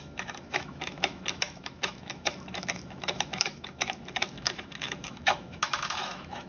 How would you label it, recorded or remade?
remade